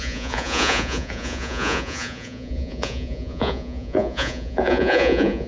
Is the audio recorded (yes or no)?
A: no